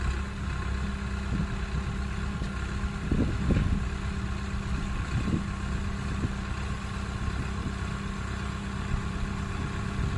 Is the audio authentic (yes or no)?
yes